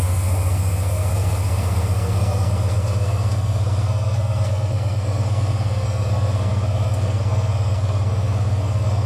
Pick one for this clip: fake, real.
fake